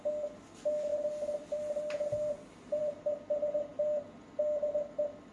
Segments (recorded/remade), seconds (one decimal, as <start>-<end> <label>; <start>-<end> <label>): 0.0-5.3 recorded